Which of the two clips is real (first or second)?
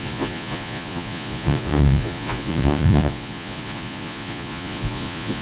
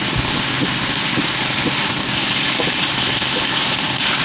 second